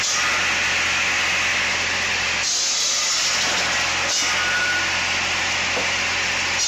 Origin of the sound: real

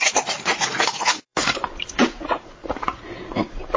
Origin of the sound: fake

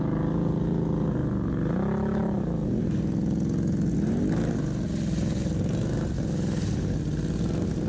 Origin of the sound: real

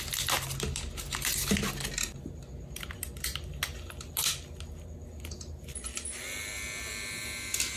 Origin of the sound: real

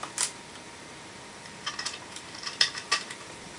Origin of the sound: fake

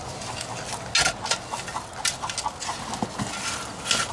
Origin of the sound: real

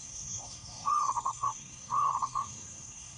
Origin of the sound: fake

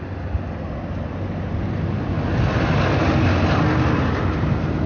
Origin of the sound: real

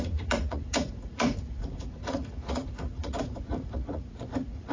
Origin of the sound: fake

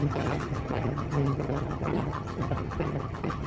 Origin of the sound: fake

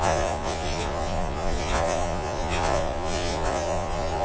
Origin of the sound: fake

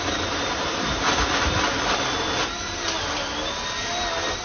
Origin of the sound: real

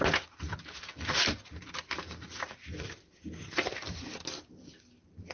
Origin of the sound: real